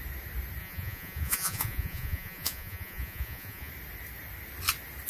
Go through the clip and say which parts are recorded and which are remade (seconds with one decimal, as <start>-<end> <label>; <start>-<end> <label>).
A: 0.0-0.6 recorded; 0.6-3.7 remade; 3.7-5.1 recorded